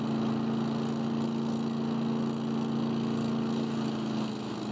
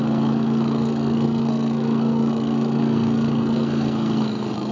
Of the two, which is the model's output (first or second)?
second